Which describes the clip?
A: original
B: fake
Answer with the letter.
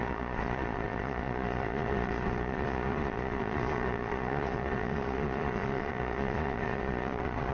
B